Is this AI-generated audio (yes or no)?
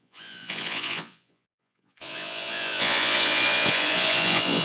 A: yes